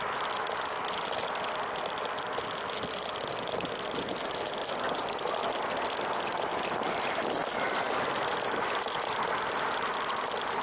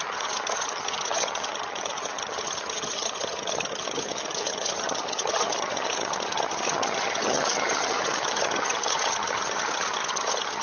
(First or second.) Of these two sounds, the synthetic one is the second